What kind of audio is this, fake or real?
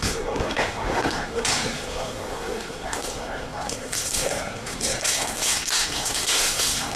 fake